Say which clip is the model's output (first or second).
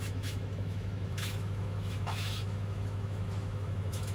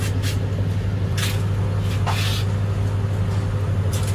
first